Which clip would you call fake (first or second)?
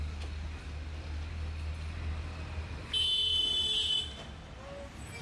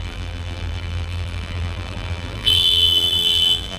second